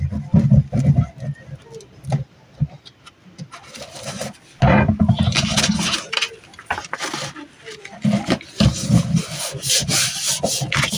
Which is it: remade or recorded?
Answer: recorded